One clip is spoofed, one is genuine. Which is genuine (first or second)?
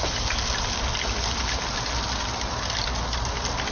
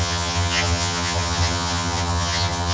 first